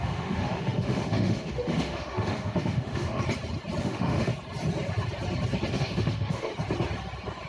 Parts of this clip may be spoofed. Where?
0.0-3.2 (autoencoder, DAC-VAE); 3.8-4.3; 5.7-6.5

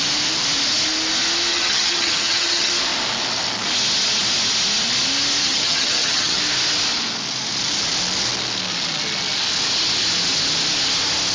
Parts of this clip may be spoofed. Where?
1.5-2.7 (vocoder, HiFi-GAN); 5.4-6.4

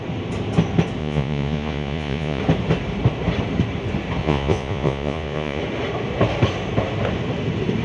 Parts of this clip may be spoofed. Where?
1.0-2.4 (vocoder, Vocos); 4.2-5.6

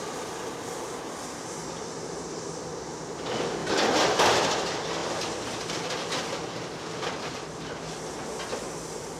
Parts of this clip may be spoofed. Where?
none

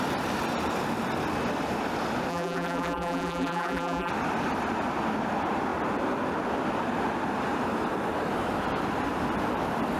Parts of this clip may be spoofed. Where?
2.3-4.1 (vocoder, BigVGAN v2)

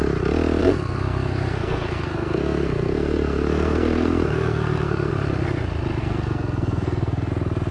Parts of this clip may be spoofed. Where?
0.6-5.1 (codec, SNAC); 6.0-7.3

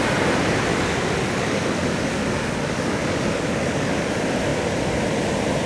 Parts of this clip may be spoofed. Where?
0.7-4.1 (codec, DAC)